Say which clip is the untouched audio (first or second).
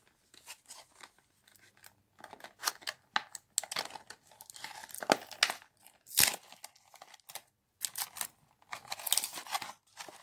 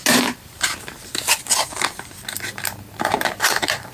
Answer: first